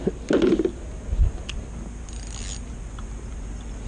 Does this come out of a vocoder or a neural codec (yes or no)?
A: no